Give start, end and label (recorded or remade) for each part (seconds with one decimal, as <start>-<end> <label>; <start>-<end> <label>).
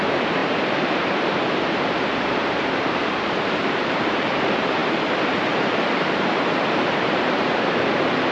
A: 0.0-8.3 remade